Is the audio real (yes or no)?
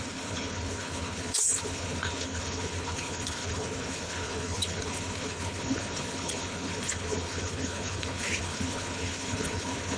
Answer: no